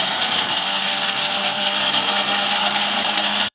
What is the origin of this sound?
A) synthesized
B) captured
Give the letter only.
A